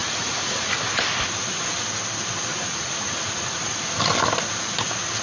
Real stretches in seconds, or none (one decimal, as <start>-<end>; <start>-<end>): 0.7-2.5; 3.6-5.2